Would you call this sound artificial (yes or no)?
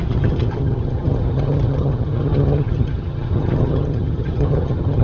yes